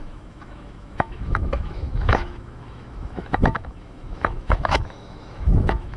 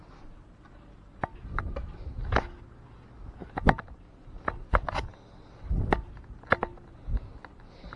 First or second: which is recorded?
second